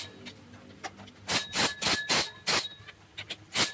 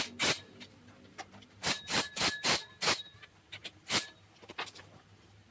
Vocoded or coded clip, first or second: second